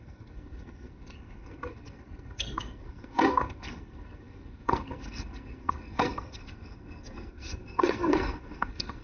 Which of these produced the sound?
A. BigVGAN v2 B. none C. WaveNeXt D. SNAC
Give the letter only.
D